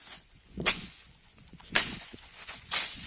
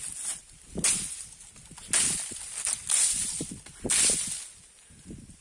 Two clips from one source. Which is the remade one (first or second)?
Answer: first